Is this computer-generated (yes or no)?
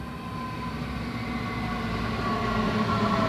no